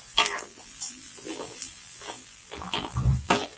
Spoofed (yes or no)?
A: yes